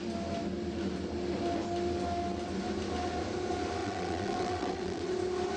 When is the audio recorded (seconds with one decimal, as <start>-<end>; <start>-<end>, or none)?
0.0-3.8; 5.1-5.6